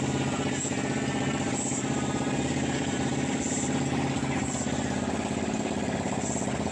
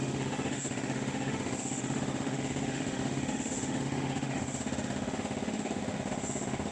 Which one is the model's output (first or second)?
second